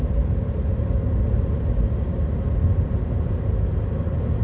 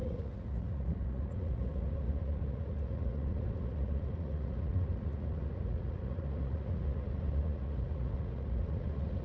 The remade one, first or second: second